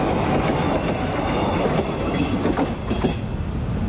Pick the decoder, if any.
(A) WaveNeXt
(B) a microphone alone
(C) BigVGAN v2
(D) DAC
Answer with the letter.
B